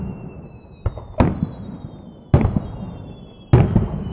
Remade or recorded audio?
recorded